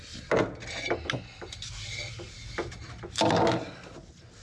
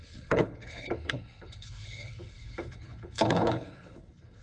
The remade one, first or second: second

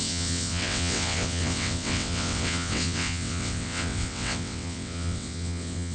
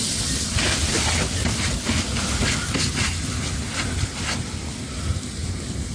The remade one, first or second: first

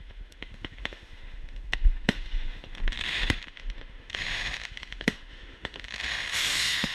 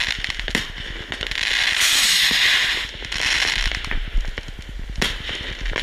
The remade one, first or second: first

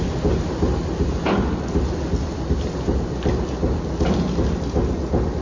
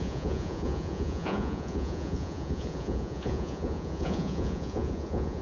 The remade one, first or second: second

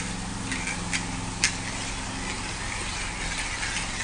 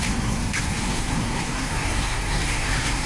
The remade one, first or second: second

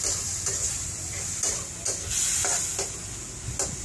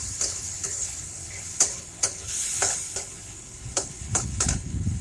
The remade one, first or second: second